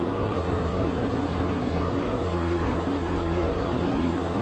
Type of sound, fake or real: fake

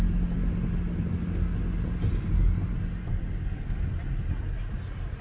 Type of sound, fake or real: real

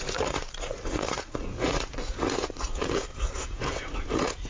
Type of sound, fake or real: fake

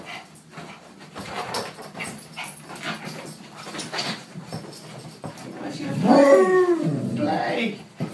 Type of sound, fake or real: real